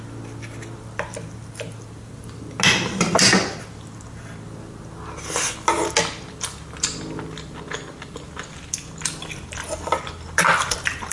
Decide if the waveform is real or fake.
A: real